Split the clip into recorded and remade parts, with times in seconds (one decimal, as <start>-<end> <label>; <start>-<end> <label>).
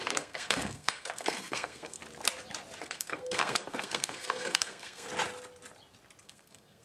0.0-2.0 remade; 2.0-2.8 recorded; 2.8-5.1 remade; 5.1-6.2 recorded; 6.2-6.8 remade